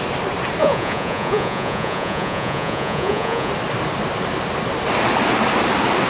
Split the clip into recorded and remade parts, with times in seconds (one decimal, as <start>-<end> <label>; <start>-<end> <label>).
0.0-0.6 recorded; 0.6-3.5 remade; 3.5-6.1 recorded